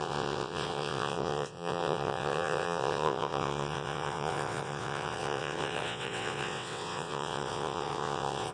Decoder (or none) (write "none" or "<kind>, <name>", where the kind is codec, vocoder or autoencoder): vocoder, WaveNeXt